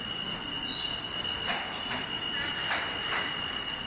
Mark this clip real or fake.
real